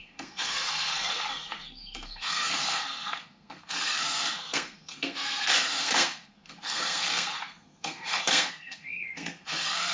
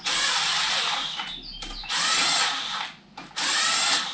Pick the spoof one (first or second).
first